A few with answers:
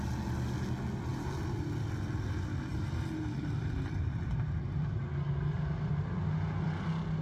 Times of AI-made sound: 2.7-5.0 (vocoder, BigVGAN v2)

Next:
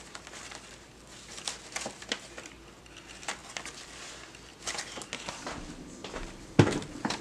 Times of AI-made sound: none

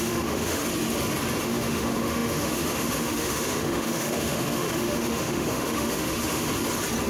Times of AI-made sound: 0.0-0.6 (autoencoder, DAC-VAE); 1.4-6.5

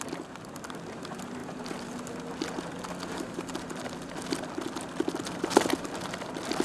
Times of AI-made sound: 0.0-1.4 (vocoder, BigVGAN v2); 4.3-6.6

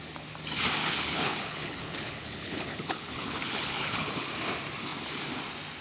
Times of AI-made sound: 0.8-4.3 (codec, HILCodec)